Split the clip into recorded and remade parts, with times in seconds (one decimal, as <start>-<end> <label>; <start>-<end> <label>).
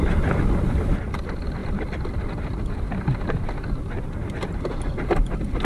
0.0-5.6 recorded